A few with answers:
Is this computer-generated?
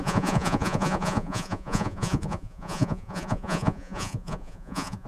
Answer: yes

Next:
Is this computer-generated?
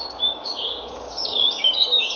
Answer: yes